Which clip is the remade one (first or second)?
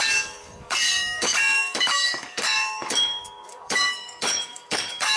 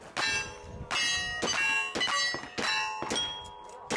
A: first